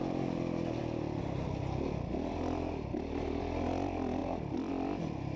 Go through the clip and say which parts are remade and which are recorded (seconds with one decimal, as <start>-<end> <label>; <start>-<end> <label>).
0.0-5.4 recorded

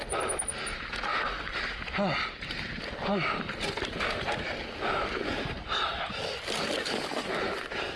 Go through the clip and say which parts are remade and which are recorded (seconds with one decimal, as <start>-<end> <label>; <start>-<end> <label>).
0.0-8.0 recorded

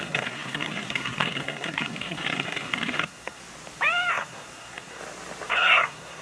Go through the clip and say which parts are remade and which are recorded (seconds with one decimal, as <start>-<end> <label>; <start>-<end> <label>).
0.0-3.4 remade; 3.4-4.1 recorded; 4.1-5.0 remade; 5.0-5.5 recorded; 5.5-6.2 remade

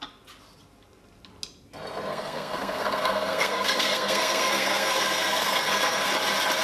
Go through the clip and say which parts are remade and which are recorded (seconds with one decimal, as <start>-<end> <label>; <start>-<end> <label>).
0.0-2.1 recorded; 2.1-6.1 remade; 6.1-6.6 recorded